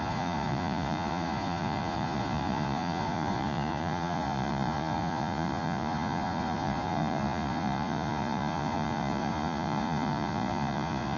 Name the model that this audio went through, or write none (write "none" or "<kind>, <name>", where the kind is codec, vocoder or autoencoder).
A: vocoder, Vocos